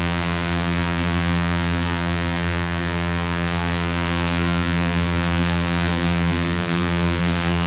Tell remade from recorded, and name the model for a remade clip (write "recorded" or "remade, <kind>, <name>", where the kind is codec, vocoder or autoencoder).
remade, vocoder, BigVGAN v2